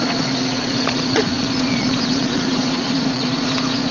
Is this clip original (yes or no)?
no